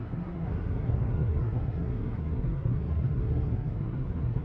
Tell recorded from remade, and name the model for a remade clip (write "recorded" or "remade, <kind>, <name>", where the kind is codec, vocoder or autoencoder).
remade, codec, SNAC